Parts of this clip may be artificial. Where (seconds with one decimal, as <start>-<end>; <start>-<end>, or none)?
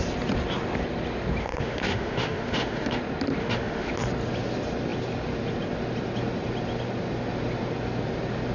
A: 1.4-3.0; 3.4-3.9